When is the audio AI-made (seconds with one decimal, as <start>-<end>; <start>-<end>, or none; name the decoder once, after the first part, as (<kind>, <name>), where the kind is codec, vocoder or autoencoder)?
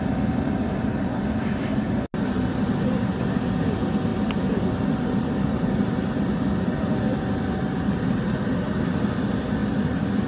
4.1-7.3 (vocoder, BigVGAN v2); 9.6-10.3